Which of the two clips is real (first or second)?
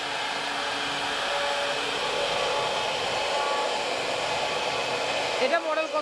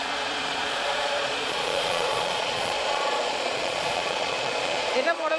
first